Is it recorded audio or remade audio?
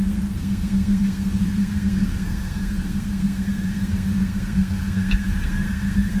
remade